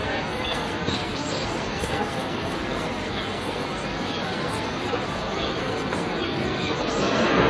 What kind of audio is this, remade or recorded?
remade